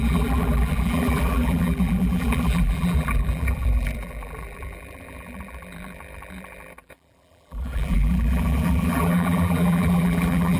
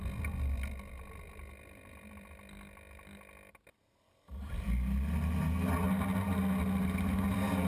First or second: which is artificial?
first